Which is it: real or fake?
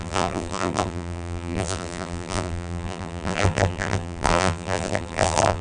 fake